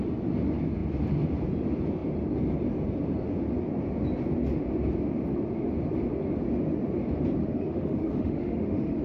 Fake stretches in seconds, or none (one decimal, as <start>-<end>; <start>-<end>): 7.4-9.0